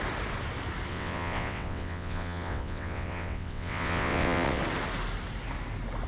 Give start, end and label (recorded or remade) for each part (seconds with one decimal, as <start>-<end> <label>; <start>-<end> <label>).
0.0-0.9 recorded; 0.9-4.6 remade; 4.6-6.1 recorded